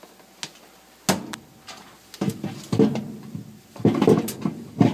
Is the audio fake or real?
real